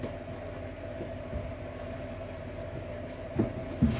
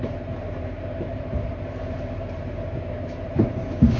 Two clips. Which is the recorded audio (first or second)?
first